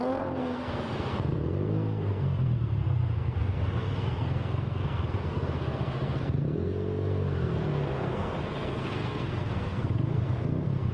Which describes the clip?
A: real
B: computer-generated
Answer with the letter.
B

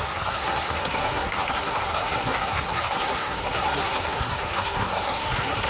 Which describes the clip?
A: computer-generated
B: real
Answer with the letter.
A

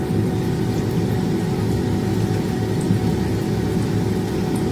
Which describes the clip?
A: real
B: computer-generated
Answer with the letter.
A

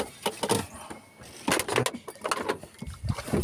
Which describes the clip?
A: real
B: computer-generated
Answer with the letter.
A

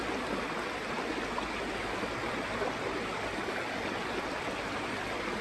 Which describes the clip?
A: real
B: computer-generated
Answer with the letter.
A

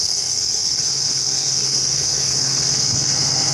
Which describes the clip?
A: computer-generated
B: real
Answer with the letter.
A